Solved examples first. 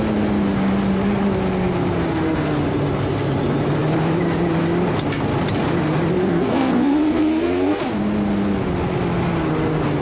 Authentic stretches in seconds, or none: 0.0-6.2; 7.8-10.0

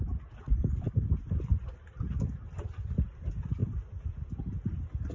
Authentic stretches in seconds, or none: 0.0-5.1

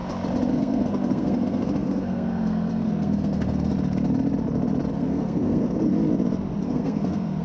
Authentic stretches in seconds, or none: 0.0-0.5; 3.7-4.9; 5.9-6.6

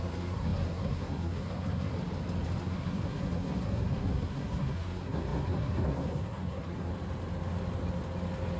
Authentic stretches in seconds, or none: 1.9-2.6; 6.9-8.6

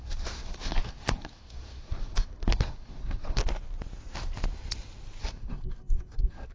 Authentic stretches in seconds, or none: 3.4-5.2

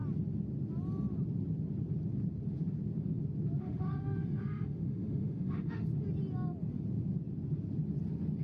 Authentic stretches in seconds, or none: 0.0-3.6; 5.9-8.4

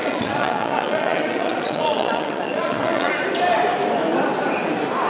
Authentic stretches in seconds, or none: 3.1-5.1